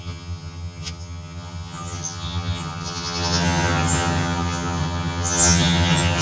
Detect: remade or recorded remade